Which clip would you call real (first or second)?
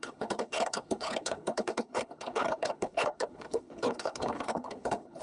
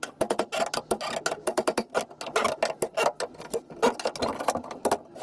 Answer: second